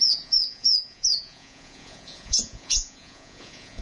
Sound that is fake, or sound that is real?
fake